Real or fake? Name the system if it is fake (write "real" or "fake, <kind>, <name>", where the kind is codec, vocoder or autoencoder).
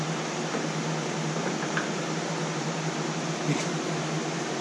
real